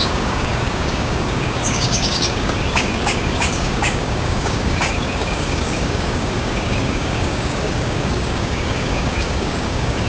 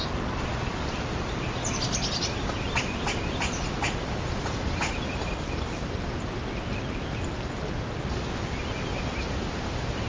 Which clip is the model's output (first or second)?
first